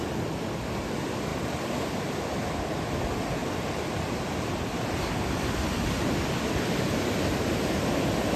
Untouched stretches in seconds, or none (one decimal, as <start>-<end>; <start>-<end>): 0.0-1.3; 1.9-8.4